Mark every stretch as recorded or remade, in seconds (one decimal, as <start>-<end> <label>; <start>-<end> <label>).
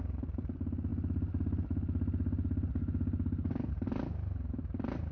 0.0-5.1 recorded